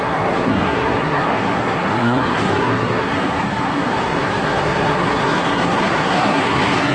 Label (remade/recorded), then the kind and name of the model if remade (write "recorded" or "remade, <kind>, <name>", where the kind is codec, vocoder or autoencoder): remade, codec, SNAC